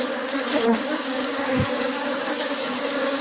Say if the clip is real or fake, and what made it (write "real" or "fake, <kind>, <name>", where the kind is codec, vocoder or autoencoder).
fake, codec, DAC